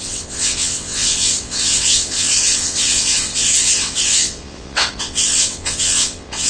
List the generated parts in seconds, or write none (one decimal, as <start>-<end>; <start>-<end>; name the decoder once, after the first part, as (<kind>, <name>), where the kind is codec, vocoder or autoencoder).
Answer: 0.0-6.5 (vocoder, WaveNeXt)

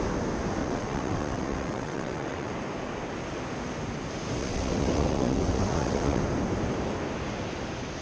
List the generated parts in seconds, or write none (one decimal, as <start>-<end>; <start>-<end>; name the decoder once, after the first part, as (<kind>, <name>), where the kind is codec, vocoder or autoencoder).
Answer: 0.6-2.5 (vocoder, WaveNeXt); 4.4-6.2

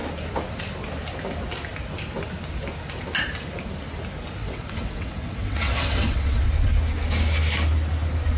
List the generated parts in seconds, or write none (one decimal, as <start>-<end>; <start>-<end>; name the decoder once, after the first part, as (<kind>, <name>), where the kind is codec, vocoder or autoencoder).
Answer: 4.4-6.5 (vocoder, WaveNeXt)